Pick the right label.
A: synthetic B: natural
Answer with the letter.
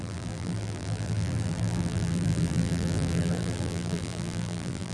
A